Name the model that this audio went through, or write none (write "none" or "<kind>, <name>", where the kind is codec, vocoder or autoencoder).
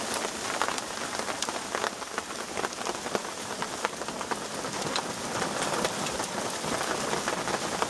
none